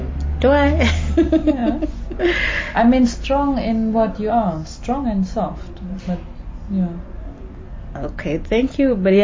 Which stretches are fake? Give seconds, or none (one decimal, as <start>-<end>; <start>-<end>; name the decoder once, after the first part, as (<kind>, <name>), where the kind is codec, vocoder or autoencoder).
none